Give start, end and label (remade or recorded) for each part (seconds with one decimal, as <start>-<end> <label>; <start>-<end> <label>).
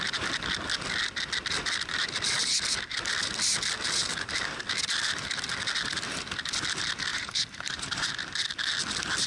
0.0-7.1 recorded; 7.1-8.1 remade; 8.1-9.3 recorded